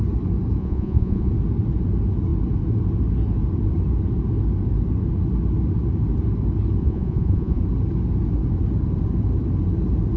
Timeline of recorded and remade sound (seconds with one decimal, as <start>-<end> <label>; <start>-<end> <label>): 0.0-0.6 recorded; 0.6-1.3 remade; 1.3-6.8 recorded; 6.8-7.6 remade; 7.6-10.2 recorded

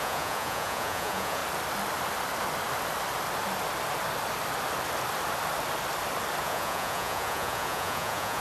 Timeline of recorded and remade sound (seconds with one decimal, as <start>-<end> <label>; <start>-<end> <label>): 0.0-1.4 remade; 1.4-6.4 recorded; 6.4-8.4 remade

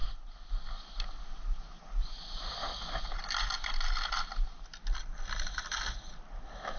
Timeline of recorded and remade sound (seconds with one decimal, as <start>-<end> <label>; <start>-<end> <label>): 0.0-6.8 recorded

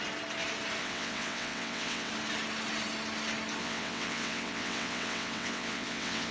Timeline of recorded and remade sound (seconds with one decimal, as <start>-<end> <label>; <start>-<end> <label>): 0.0-0.8 recorded; 0.8-2.1 remade; 2.1-3.6 recorded; 3.6-6.3 remade